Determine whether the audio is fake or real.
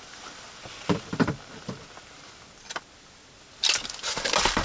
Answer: real